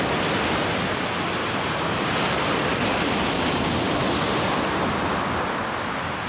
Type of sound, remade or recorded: recorded